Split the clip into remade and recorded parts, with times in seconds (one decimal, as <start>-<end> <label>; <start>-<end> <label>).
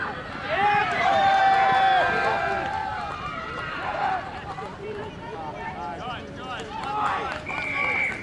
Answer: 0.0-0.8 recorded; 0.8-1.4 remade; 1.4-2.8 recorded; 2.8-5.1 remade; 5.1-8.2 recorded